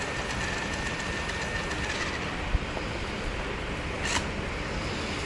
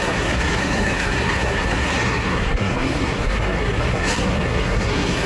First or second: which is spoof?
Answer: second